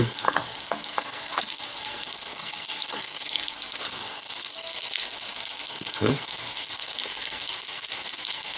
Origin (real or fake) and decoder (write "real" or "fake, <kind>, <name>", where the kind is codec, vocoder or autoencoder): fake, codec, SNAC